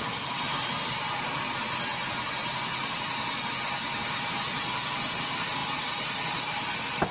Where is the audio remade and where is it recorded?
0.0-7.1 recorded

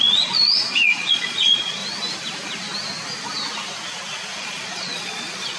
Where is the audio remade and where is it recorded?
0.0-1.8 remade; 1.8-4.4 recorded; 4.4-5.6 remade

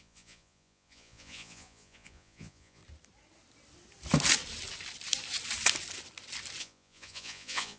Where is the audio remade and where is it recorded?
0.0-2.8 remade; 2.8-6.6 recorded; 6.6-7.8 remade

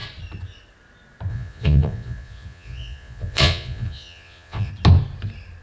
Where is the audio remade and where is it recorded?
0.0-1.3 recorded; 1.3-4.7 remade; 4.7-5.6 recorded

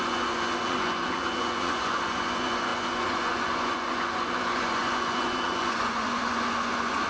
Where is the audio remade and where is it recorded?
0.0-7.1 remade

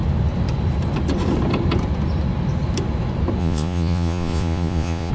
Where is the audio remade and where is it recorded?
0.0-3.4 recorded; 3.4-5.1 remade